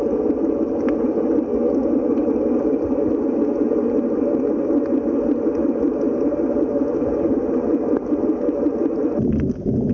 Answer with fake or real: real